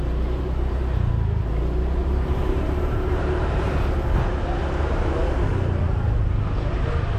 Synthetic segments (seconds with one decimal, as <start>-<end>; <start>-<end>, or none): 2.0-3.7